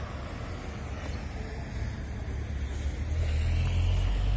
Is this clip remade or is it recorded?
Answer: recorded